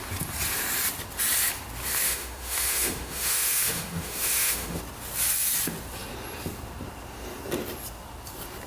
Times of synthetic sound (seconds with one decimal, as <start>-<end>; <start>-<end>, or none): 1.9-4.8